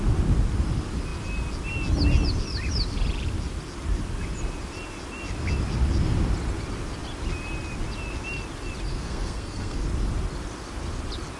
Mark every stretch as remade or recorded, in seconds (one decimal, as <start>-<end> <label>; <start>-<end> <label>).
0.0-8.9 recorded; 8.9-9.8 remade; 9.8-11.4 recorded